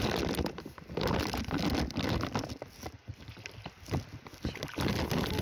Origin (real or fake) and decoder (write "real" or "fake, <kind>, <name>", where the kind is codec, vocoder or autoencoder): real